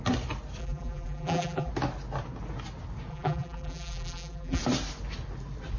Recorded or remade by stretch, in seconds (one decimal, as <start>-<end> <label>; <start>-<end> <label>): 0.0-0.6 recorded; 0.6-1.7 remade; 1.7-3.1 recorded; 3.1-4.6 remade; 4.6-5.8 recorded